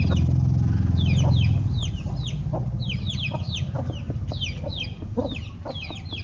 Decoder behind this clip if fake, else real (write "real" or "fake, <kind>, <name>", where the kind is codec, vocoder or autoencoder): real